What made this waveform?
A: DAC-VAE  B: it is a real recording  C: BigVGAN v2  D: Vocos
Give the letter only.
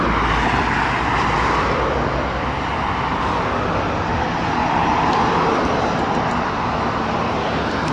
B